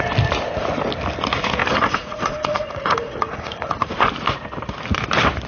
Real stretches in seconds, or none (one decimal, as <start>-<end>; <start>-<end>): 0.0-1.6; 4.1-5.5